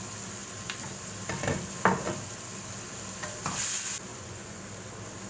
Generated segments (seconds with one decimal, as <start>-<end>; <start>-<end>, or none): 4.1-4.6